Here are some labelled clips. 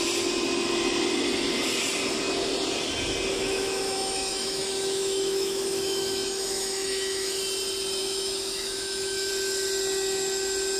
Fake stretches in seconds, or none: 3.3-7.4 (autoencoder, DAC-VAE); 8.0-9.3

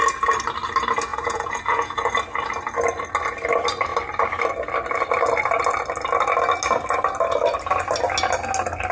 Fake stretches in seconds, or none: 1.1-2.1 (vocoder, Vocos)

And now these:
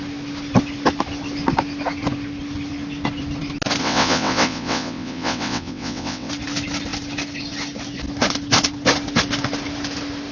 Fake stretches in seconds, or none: 3.8-6.3 (vocoder, WaveNeXt)

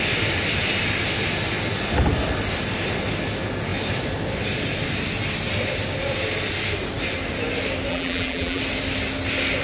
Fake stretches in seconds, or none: 7.9-8.6 (vocoder, BigVGAN v2)

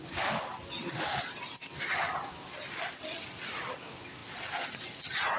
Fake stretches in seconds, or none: none

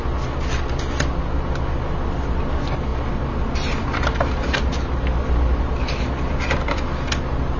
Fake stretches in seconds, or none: none

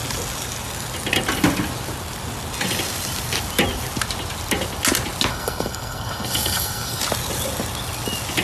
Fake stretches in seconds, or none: 5.3-7.0 (codec, SNAC)

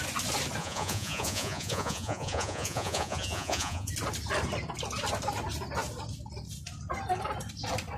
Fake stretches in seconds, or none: 0.6-3.9 (vocoder, Vocos)